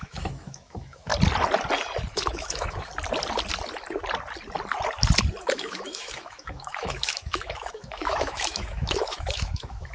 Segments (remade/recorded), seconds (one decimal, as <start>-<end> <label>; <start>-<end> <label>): 0.0-1.1 remade; 1.1-2.1 recorded; 2.1-2.9 remade; 2.9-5.4 recorded; 5.4-9.9 remade